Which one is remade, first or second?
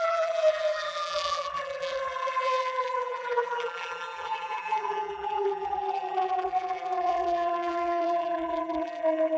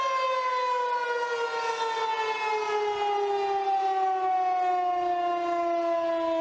first